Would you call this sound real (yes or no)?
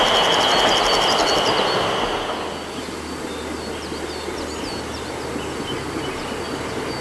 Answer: yes